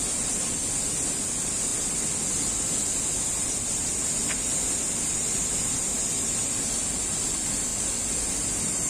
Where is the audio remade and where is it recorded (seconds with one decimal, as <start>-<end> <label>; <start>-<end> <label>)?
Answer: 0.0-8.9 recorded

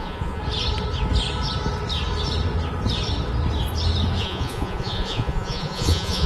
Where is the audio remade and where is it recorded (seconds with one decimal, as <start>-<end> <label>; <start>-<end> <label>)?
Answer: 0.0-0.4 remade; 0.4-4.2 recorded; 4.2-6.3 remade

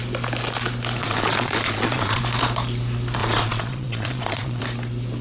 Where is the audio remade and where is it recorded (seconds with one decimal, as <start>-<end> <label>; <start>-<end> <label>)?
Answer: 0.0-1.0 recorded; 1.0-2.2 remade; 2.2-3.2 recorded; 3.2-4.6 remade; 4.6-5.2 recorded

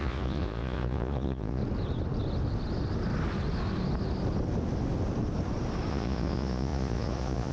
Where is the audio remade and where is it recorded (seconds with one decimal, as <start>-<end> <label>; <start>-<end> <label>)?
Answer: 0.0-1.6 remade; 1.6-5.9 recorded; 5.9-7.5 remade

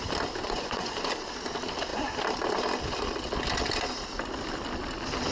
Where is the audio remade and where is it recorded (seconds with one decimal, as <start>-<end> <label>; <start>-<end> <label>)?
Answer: 0.0-0.4 recorded; 0.4-1.1 remade; 1.1-5.3 recorded